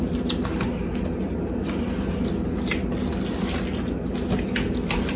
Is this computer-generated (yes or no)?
no